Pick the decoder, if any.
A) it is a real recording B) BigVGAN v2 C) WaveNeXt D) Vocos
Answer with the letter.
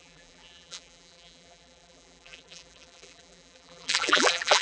B